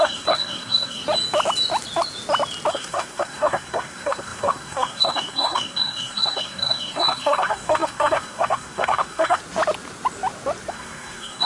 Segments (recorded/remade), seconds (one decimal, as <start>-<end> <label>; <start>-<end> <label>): 0.0-1.0 remade; 1.0-2.7 recorded; 2.7-9.4 remade; 9.4-10.7 recorded; 10.7-11.5 remade